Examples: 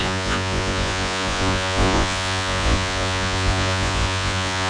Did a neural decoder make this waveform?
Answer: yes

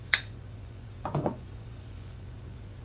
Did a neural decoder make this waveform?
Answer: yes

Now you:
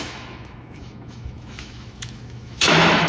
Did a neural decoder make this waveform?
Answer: yes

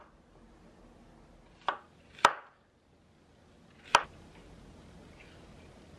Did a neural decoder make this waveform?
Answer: no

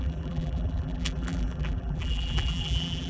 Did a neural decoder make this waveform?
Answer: yes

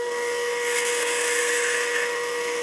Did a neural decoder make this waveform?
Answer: yes